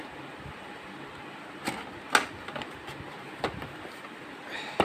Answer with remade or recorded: recorded